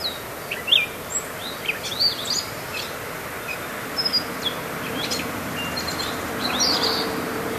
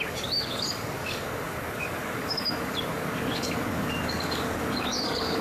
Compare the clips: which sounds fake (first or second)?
second